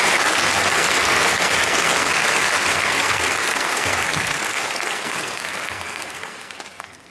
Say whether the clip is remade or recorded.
remade